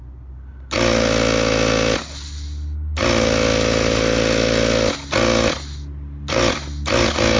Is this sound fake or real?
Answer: real